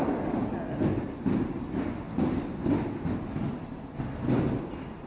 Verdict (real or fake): real